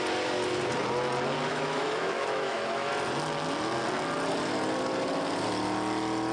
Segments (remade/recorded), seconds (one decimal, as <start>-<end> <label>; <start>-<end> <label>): 0.0-1.5 recorded; 1.5-2.9 remade; 2.9-6.3 recorded